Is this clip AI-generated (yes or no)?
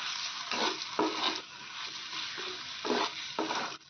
no